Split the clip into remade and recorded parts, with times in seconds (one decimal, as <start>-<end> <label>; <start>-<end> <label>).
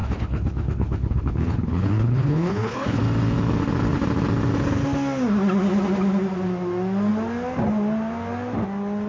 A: 0.0-3.0 remade; 3.0-9.1 recorded